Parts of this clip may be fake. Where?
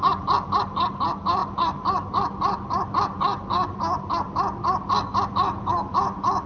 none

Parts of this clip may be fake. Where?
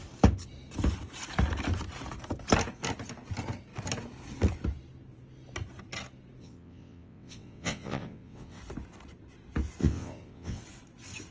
6.4-8.6; 9.8-10.6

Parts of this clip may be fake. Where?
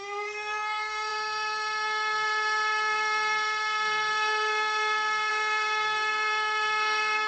0.0-7.3